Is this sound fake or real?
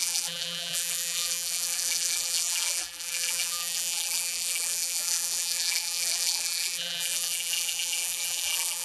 fake